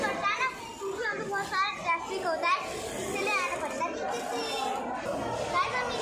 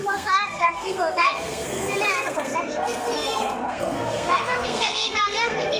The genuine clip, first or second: first